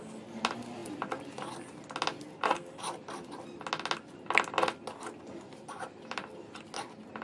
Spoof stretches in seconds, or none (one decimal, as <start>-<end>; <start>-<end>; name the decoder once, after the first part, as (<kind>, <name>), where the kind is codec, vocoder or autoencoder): none